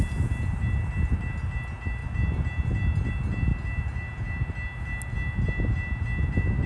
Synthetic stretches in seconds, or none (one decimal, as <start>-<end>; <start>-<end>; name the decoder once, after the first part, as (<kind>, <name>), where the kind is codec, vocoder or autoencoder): none